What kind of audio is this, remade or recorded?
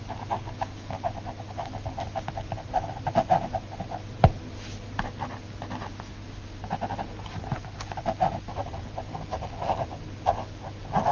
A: recorded